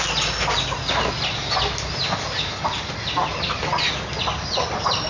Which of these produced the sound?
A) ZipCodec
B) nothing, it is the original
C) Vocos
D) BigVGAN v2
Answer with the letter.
B